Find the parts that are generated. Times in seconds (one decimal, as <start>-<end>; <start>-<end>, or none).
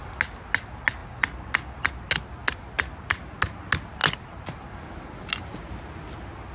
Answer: none